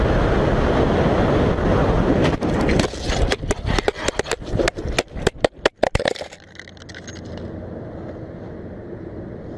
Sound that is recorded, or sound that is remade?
recorded